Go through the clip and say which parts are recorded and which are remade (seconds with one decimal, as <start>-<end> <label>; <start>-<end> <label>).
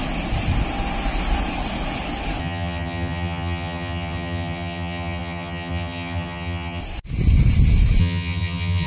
0.0-2.4 recorded; 2.4-6.8 remade; 6.8-8.0 recorded; 8.0-8.9 remade